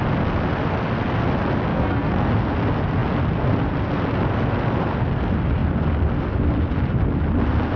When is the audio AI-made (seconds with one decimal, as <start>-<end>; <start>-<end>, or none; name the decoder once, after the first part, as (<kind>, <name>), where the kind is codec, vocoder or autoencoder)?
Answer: 1.7-2.3 (codec, SNAC)